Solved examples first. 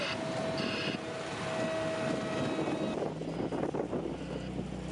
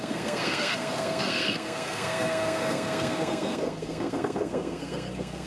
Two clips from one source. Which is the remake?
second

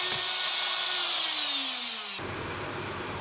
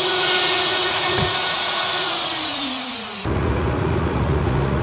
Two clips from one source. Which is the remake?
second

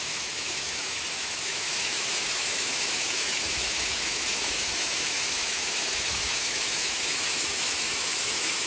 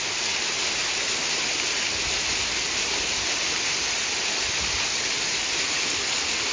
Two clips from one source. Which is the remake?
first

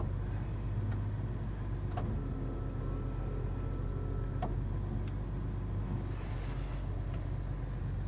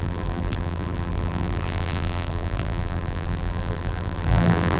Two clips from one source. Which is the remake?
second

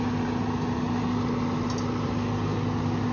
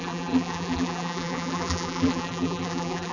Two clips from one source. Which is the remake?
second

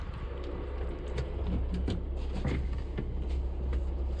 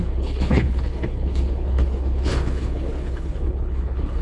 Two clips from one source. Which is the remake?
second